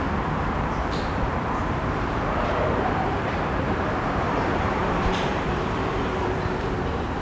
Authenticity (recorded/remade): remade